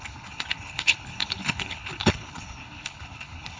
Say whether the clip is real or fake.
fake